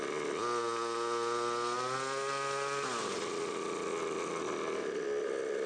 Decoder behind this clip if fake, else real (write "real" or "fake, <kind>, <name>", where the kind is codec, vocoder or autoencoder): real